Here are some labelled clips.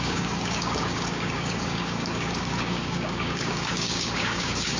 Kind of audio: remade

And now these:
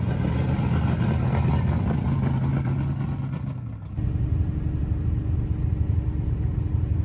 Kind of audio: recorded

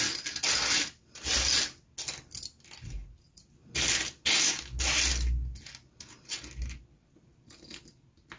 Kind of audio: recorded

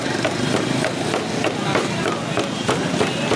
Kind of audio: recorded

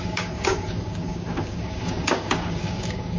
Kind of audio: remade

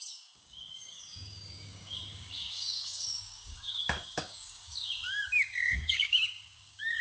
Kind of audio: remade